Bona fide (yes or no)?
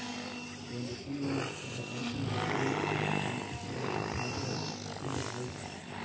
yes